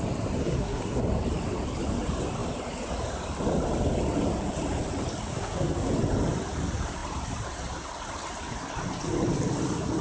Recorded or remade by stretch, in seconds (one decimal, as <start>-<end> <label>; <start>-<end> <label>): 0.0-0.4 recorded; 0.4-1.0 remade; 1.0-5.3 recorded; 5.3-5.9 remade; 5.9-10.0 recorded